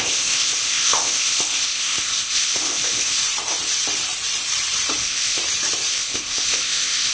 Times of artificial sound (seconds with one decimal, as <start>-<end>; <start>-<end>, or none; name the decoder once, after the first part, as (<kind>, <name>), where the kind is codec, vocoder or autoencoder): 0.0-3.2 (codec, ZipCodec); 5.0-5.4; 5.9-7.1